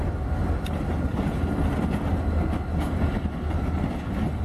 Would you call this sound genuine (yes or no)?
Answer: yes